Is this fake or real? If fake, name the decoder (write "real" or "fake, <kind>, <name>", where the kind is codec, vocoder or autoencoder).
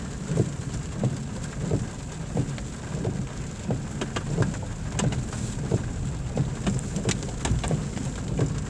real